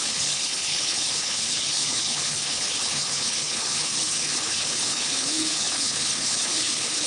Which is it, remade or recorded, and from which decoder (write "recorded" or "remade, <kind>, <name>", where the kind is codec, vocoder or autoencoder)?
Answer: remade, codec, HILCodec